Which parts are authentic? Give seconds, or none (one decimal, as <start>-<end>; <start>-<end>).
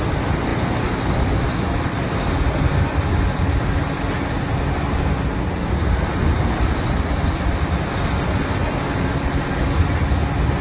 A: 0.0-10.6